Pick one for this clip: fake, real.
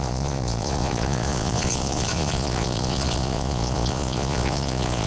fake